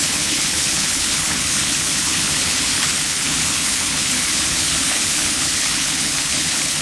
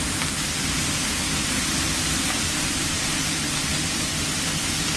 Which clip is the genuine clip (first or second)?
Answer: second